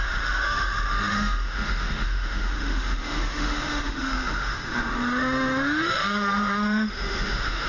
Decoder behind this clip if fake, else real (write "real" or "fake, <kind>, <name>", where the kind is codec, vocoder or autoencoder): fake, autoencoder, DAC-VAE